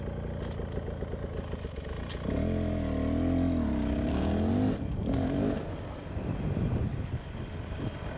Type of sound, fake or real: real